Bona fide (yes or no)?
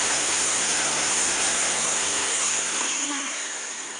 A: no